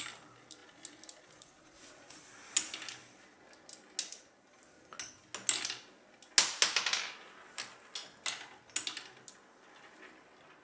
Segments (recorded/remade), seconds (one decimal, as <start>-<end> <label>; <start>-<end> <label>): 0.0-10.6 recorded